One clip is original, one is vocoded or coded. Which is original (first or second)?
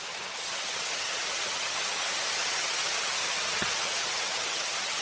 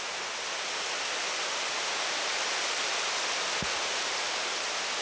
second